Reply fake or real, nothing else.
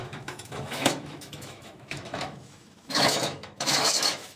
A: fake